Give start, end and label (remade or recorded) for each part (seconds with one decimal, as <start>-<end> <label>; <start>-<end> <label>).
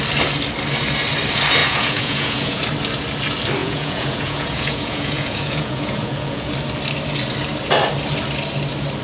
0.0-1.6 recorded; 1.6-2.6 remade; 2.6-3.6 recorded; 3.6-6.5 remade; 6.5-9.0 recorded